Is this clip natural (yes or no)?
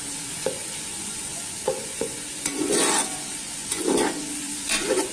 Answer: no